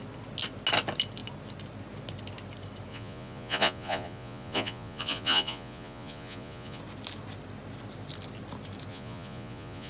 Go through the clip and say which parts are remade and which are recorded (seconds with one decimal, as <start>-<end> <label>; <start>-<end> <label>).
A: 0.0-2.9 recorded; 2.9-6.8 remade; 6.8-8.9 recorded; 8.9-9.9 remade

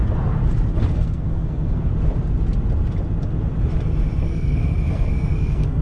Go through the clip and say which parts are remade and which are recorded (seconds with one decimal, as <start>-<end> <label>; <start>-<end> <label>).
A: 0.0-0.9 recorded; 0.9-1.9 remade; 1.9-4.2 recorded; 4.2-5.8 remade

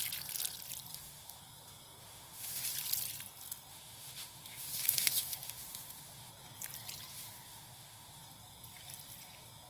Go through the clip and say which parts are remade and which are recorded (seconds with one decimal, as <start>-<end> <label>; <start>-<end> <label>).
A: 0.0-0.9 recorded; 0.9-1.4 remade; 1.4-2.0 recorded; 2.0-2.7 remade; 2.7-3.7 recorded; 3.7-6.3 remade; 6.3-7.1 recorded; 7.1-8.2 remade; 8.2-9.7 recorded

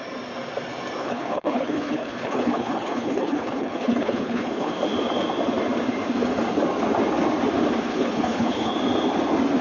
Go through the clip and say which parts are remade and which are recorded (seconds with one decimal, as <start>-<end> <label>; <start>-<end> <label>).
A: 0.0-1.0 recorded; 1.0-4.7 remade; 4.7-7.9 recorded; 7.9-8.7 remade; 8.7-9.6 recorded

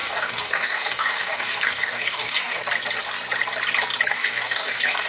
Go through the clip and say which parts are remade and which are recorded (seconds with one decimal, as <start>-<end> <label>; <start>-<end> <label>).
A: 0.0-2.6 remade; 2.6-4.1 recorded; 4.1-5.1 remade